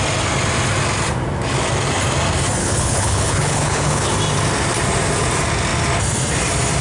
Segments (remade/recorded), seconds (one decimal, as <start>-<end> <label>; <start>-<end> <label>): 0.0-2.6 recorded; 2.6-4.1 remade; 4.1-6.8 recorded